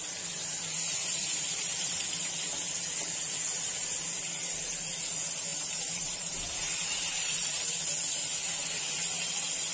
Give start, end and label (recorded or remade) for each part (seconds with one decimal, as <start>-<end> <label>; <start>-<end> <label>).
0.0-1.0 recorded; 1.0-2.0 remade; 2.0-5.5 recorded; 5.5-7.6 remade; 7.6-9.7 recorded